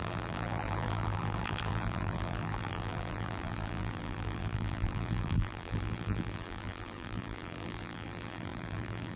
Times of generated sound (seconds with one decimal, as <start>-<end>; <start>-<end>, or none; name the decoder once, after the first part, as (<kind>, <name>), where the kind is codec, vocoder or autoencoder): 0.0-9.2 (vocoder, BigVGAN v2)